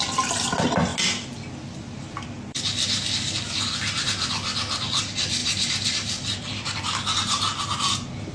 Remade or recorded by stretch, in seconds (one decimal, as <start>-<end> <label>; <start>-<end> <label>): 0.0-5.4 recorded; 5.4-6.8 remade; 6.8-8.3 recorded